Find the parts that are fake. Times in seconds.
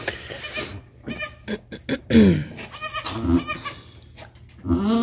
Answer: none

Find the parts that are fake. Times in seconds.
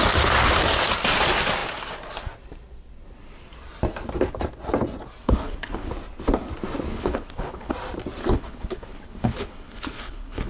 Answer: 5.2-5.9 (codec, HILCodec); 6.9-7.7; 8.2-10.5